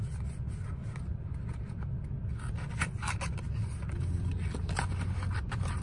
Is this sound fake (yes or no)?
no